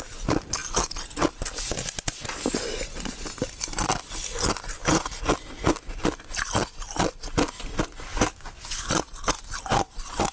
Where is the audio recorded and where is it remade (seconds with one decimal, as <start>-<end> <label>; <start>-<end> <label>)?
0.0-8.1 recorded; 8.1-8.9 remade; 8.9-10.3 recorded